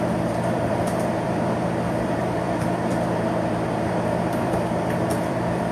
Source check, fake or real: fake